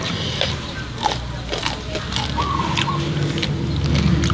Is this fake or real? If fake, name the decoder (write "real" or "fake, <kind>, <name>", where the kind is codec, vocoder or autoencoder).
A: real